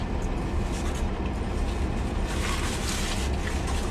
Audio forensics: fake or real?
real